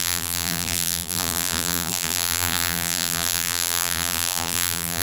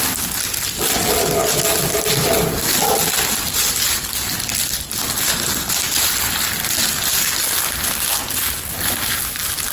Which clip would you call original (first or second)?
second